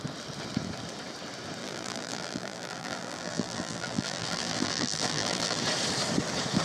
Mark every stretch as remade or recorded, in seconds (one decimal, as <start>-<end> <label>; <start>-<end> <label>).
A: 0.0-1.6 recorded; 1.6-5.6 remade; 5.6-6.6 recorded

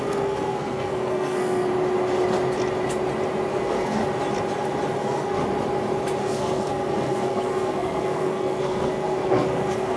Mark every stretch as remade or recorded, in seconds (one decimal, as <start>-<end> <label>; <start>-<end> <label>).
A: 0.0-1.7 remade; 1.7-3.5 recorded; 3.5-4.0 remade; 4.0-5.0 recorded; 5.0-5.4 remade; 5.4-6.2 recorded; 6.2-10.0 remade

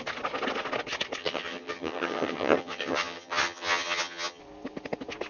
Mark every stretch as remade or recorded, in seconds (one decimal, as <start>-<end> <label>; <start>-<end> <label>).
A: 0.0-1.2 recorded; 1.2-4.4 remade; 4.4-5.3 recorded

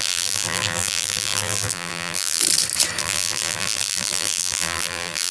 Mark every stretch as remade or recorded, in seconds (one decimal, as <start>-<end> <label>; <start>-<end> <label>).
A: 0.0-2.4 remade; 2.4-3.0 recorded; 3.0-5.3 remade

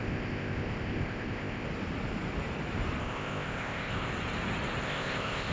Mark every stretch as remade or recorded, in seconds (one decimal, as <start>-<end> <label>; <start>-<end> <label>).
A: 0.0-1.7 remade; 1.7-3.0 recorded; 3.0-4.1 remade; 4.1-4.8 recorded; 4.8-5.5 remade

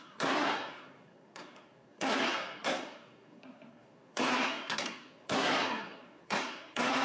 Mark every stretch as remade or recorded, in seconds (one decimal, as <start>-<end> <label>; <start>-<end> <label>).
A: 0.0-7.0 remade

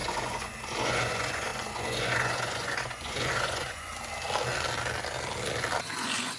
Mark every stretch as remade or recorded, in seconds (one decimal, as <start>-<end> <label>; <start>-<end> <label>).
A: 0.0-3.9 remade; 3.9-5.8 recorded; 5.8-6.4 remade

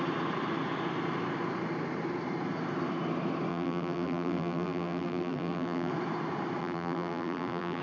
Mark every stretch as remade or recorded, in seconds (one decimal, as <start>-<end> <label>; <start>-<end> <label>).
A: 0.0-3.5 recorded; 3.5-5.9 remade; 5.9-6.6 recorded; 6.6-7.8 remade